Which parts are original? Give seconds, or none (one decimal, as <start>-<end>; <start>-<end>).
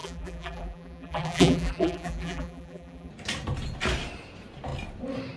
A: 3.1-5.4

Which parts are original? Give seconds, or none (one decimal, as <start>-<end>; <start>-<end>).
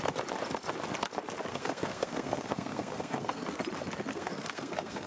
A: 0.0-1.5; 3.6-4.1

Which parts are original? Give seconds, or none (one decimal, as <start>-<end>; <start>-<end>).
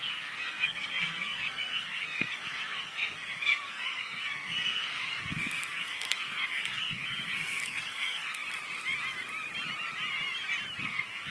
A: 8.4-10.8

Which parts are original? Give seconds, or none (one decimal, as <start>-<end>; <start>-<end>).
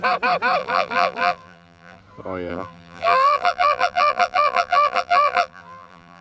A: 0.0-0.6; 2.0-2.5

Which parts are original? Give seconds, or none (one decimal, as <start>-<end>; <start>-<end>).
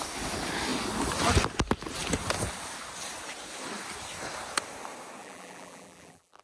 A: 0.0-5.2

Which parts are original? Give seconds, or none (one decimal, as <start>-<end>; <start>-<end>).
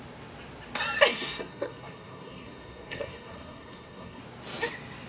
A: 0.0-1.1; 4.2-5.1